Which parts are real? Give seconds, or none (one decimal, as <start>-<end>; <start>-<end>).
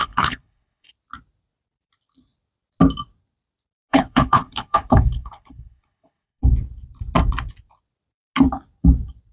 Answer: 0.9-3.9; 6.4-9.3